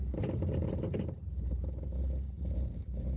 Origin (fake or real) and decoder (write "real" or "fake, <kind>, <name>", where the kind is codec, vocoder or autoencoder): fake, vocoder, BigVGAN v2